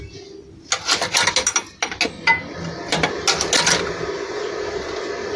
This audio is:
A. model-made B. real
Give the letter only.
B